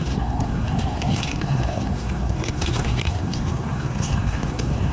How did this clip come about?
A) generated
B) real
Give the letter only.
A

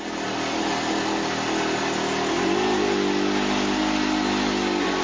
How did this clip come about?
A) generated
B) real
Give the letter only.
B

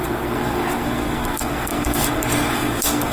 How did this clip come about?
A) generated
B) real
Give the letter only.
A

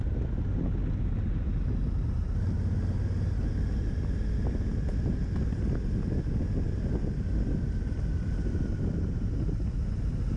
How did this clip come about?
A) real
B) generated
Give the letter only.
A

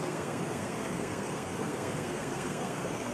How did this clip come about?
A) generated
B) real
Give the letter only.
A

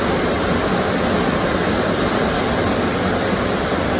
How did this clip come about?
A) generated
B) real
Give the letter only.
B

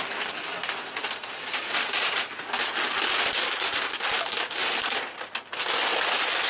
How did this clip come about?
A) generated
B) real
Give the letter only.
B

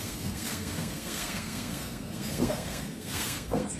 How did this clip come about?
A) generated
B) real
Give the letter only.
A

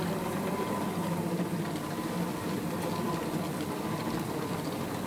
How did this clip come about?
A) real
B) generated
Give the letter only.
A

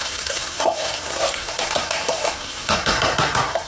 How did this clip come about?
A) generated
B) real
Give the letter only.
A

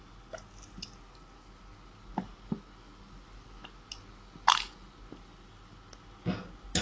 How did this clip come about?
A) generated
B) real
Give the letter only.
B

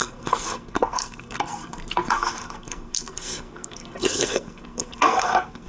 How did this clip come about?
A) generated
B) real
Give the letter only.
A